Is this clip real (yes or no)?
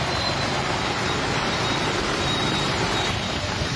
no